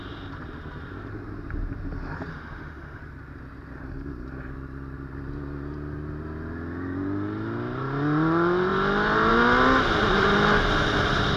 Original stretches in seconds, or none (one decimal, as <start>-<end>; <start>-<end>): 0.0-2.3; 3.0-11.4